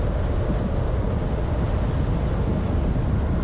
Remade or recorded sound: recorded